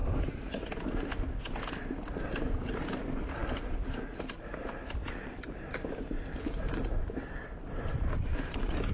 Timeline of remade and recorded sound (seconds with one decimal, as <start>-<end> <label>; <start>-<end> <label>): 0.0-8.9 recorded